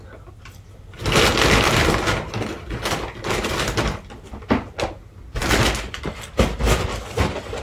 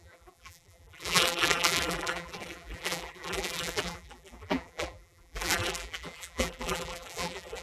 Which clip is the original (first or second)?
first